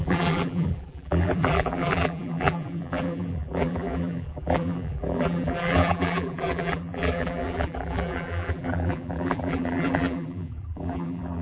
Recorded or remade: remade